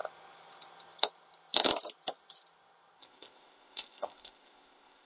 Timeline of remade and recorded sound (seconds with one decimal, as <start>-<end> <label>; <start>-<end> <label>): 0.0-3.0 recorded; 3.0-5.1 remade